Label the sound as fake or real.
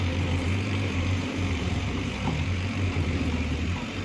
fake